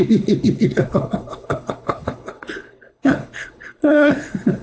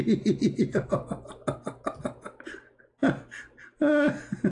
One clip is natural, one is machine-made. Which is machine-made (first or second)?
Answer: first